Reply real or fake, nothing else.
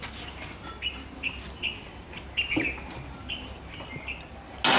real